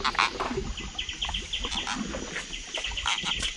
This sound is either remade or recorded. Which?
recorded